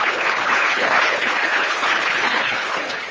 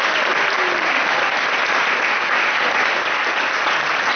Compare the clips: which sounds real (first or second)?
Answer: second